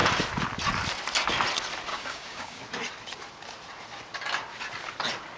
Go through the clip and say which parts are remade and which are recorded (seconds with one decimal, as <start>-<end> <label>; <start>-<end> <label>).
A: 0.0-1.9 recorded; 1.9-2.6 remade; 2.6-5.4 recorded